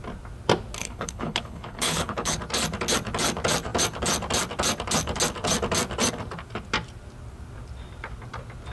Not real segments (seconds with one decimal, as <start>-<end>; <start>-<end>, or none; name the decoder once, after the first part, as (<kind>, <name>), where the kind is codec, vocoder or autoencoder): 0.8-2.4 (codec, HILCodec)